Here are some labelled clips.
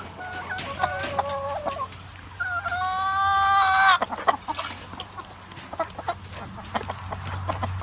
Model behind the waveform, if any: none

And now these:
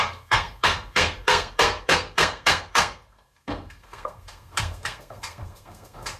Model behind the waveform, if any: codec, SNAC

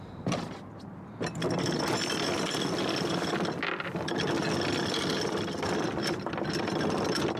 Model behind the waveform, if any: none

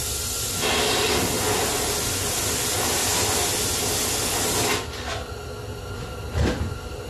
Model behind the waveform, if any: none